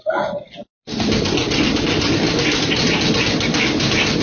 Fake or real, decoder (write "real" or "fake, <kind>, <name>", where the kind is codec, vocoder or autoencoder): real